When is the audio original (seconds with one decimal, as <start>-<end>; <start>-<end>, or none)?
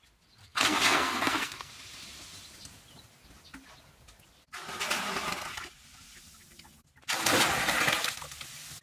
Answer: 0.0-0.4; 1.7-8.8